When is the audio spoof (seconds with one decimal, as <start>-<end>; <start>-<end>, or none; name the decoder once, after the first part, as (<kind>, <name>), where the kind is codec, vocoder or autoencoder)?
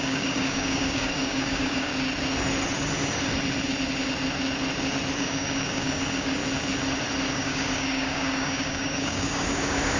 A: 0.0-1.9 (codec, DAC); 5.2-6.4; 7.3-10.0